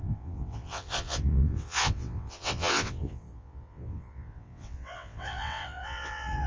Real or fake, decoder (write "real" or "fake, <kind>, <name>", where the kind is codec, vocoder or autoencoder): fake, vocoder, WaveNeXt